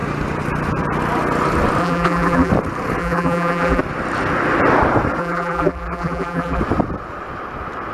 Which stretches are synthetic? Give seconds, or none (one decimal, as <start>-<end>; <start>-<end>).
1.8-2.5; 3.0-3.8; 5.2-6.6